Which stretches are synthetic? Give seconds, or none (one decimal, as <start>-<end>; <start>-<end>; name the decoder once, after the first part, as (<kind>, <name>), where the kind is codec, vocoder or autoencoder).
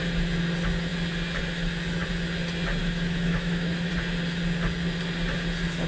2.8-3.9 (autoencoder, DAC-VAE)